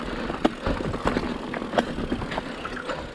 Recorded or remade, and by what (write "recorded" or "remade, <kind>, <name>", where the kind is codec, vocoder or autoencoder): recorded